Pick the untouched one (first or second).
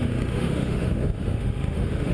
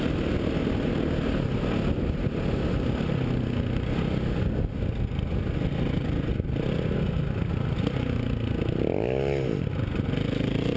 second